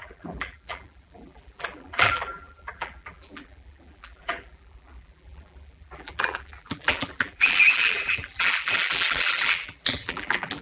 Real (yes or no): no